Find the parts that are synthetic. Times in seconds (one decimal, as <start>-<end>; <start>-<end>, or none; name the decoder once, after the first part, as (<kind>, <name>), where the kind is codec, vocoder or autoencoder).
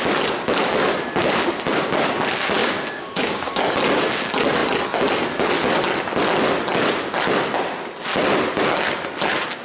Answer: 2.6-3.6 (codec, DAC)